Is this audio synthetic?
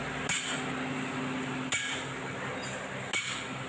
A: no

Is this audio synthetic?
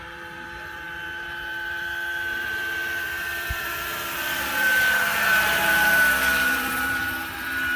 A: yes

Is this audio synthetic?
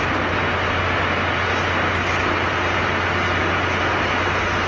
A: no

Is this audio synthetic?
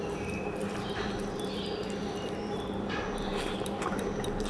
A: yes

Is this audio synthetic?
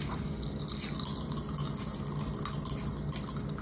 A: no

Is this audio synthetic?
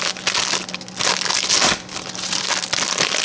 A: no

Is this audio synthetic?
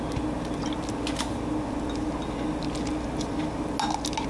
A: no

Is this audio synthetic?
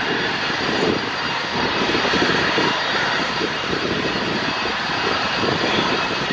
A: yes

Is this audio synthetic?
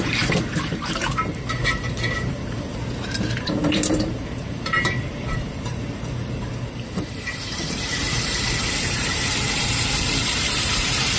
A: yes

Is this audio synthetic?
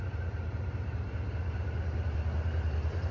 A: yes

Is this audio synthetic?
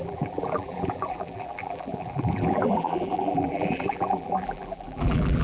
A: yes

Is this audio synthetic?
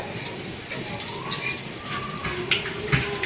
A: no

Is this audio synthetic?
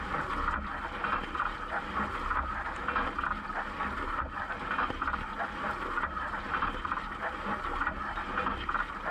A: no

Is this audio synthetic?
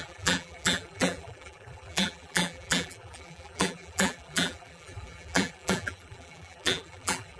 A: yes